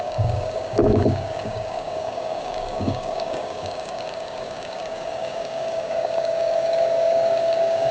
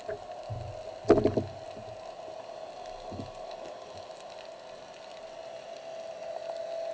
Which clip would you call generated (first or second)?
first